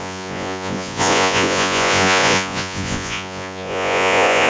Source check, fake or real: fake